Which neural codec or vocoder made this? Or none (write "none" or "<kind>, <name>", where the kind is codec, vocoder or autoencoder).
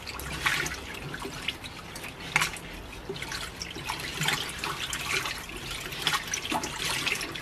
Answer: none